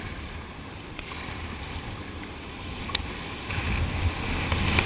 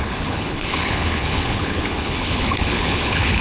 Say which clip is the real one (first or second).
first